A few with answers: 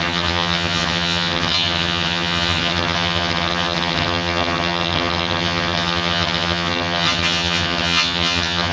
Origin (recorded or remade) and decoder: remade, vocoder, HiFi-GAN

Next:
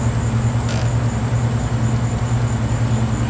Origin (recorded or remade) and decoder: recorded